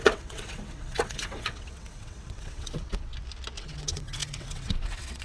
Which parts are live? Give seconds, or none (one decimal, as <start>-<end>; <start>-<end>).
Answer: 3.1-3.6